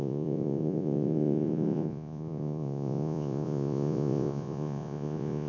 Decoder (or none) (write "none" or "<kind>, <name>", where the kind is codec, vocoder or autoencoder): vocoder, Vocos